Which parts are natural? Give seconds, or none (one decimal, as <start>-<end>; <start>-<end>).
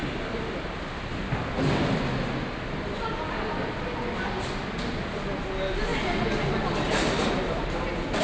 0.0-8.2